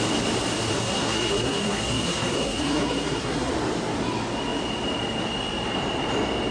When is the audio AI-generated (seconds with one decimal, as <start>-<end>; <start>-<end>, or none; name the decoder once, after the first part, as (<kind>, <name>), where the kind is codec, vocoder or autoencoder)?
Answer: 0.7-3.5 (codec, SNAC)